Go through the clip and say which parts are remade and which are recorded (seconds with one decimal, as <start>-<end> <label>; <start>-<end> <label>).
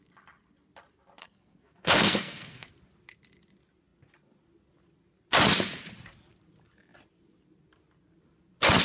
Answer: 0.0-1.2 recorded; 1.2-2.7 remade; 2.7-8.8 recorded